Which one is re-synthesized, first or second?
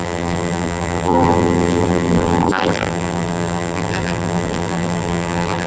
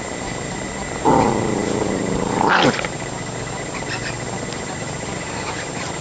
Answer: first